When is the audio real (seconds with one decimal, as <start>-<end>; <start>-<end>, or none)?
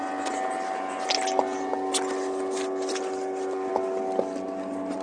0.0-5.0